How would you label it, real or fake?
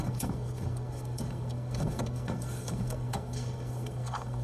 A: fake